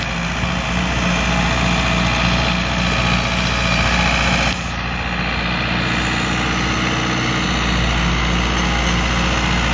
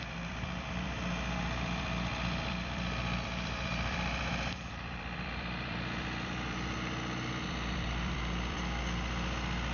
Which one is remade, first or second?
second